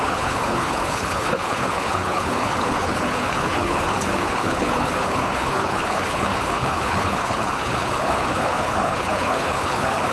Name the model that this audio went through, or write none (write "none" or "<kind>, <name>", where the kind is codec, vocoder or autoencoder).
codec, HILCodec